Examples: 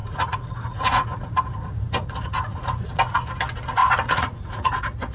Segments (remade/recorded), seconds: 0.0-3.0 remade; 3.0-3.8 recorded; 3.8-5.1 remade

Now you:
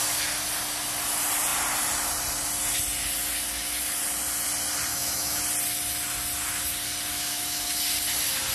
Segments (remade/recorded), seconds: 0.0-4.9 recorded; 4.9-5.4 remade; 5.4-7.1 recorded; 7.1-7.7 remade; 7.7-8.5 recorded

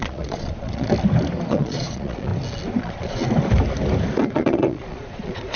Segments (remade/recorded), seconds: 0.0-0.9 remade; 0.9-1.5 recorded; 1.5-2.3 remade; 2.3-2.8 recorded; 2.8-3.2 remade; 3.2-4.2 recorded; 4.2-5.6 remade

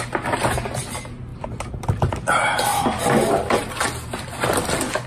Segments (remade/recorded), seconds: 0.0-5.1 recorded

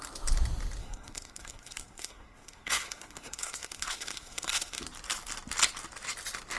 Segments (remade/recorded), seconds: 0.0-0.8 recorded; 0.8-4.8 remade; 4.8-6.6 recorded